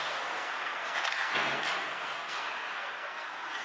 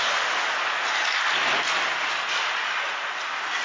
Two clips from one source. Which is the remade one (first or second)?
first